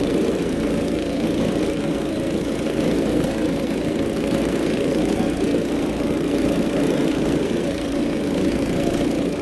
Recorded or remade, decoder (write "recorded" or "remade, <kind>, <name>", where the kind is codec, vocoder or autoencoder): remade, codec, SNAC